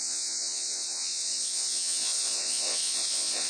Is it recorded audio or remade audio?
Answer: remade